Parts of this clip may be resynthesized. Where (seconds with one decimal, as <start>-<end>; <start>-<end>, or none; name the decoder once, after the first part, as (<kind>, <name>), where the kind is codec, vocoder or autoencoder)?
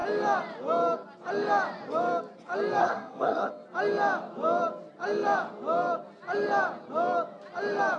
2.8-3.5 (codec, SNAC)